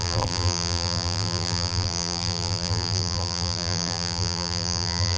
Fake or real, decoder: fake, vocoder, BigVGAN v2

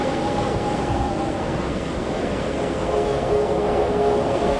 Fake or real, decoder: fake, codec, SNAC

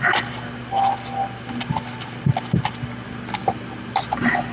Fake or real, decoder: real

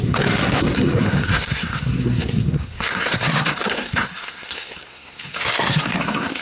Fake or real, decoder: fake, codec, SNAC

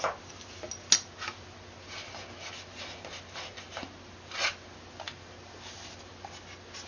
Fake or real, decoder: real